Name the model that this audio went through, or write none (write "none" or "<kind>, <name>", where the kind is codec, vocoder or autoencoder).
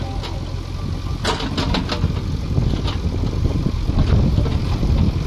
none